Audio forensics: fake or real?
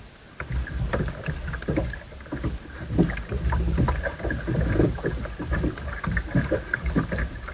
real